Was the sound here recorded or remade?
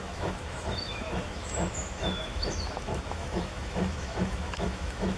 remade